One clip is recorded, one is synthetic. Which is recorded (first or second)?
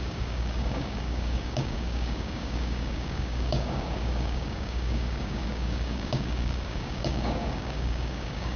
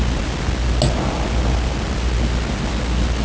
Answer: second